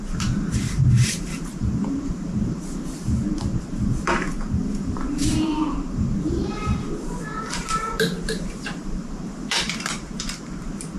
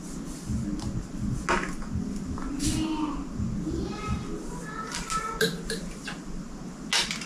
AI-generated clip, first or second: first